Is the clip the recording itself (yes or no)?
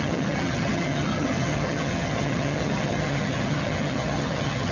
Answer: no